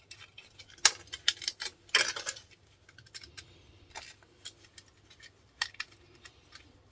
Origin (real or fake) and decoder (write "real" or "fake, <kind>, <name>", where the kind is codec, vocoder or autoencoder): real